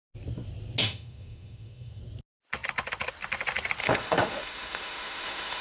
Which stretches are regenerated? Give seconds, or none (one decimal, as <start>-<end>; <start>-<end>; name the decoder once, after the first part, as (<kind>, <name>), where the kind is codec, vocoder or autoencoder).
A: 0.8-2.0 (autoencoder, DAC-VAE); 3.8-5.6